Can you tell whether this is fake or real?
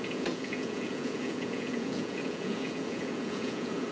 fake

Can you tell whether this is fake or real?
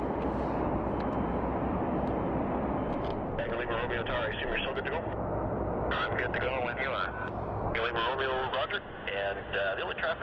real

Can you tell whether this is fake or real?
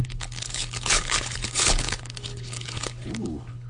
fake